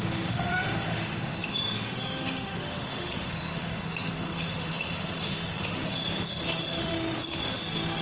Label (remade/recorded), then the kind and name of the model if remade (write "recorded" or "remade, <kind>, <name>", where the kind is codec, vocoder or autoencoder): remade, autoencoder, DAC-VAE